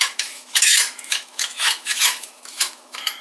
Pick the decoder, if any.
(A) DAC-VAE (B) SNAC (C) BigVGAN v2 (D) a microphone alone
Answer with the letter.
A